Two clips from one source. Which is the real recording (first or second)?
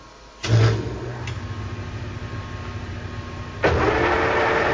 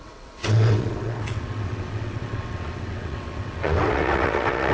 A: first